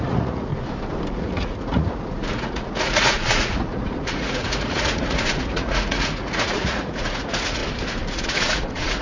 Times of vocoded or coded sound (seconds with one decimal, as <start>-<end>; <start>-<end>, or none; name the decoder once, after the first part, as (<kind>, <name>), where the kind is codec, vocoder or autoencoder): 0.0-0.5 (vocoder, Vocos); 1.1-7.6; 8.1-9.0